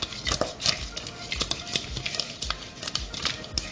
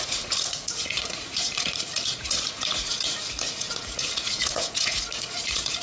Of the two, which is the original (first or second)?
first